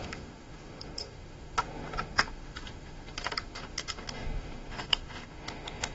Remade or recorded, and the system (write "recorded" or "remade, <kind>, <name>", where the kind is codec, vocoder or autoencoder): remade, autoencoder, DAC-VAE